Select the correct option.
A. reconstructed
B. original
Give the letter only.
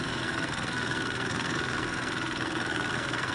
A